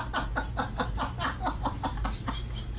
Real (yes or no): yes